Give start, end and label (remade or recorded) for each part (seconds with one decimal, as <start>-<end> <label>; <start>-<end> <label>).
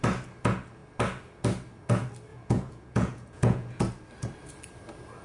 0.0-2.3 recorded; 2.3-3.8 remade; 3.8-5.2 recorded